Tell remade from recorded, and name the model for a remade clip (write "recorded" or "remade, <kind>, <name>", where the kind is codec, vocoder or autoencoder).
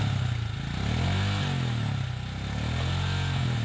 recorded